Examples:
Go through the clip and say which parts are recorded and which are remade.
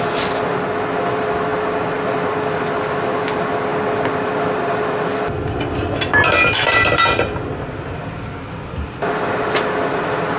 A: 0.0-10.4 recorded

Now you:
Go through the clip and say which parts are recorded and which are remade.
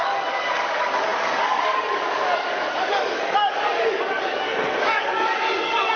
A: 0.0-6.0 remade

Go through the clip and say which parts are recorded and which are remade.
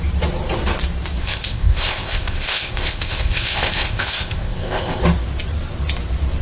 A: 0.0-1.2 recorded; 1.2-5.0 remade; 5.0-6.4 recorded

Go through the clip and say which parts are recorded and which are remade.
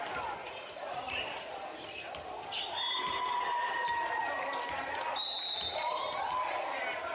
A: 0.0-0.4 recorded; 0.4-1.2 remade; 1.2-7.1 recorded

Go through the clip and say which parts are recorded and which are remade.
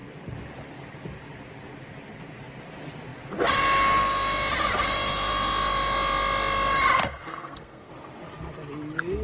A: 0.0-7.0 recorded; 7.0-7.9 remade; 7.9-9.2 recorded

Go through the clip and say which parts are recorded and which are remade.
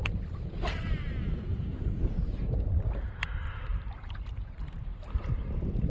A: 0.0-1.5 recorded; 1.5-2.2 remade; 2.2-3.7 recorded; 3.7-5.5 remade; 5.5-5.9 recorded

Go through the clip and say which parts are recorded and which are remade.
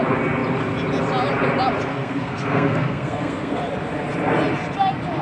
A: 0.0-1.9 recorded; 1.9-3.6 remade; 3.6-5.2 recorded